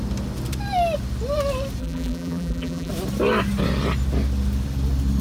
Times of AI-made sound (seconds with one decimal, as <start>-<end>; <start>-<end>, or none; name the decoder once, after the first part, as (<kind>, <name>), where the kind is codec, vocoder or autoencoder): 1.8-2.9 (vocoder, BigVGAN v2)